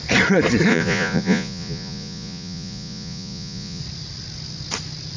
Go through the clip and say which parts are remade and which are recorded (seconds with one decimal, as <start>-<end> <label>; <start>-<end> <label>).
0.0-0.7 recorded; 0.7-3.8 remade; 3.8-5.2 recorded